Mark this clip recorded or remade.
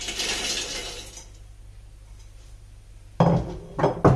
recorded